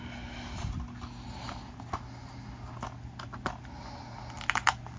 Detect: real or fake real